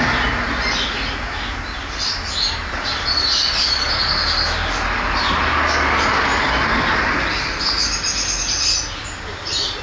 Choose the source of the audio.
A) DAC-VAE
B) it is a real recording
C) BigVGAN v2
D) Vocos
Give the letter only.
B